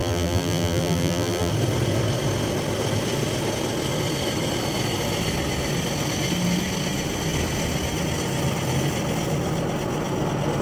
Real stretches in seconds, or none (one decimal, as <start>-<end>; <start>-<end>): 1.5-10.6